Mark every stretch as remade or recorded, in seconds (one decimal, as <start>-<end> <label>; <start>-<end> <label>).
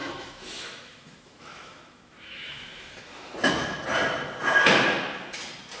0.0-3.5 remade; 3.5-5.8 recorded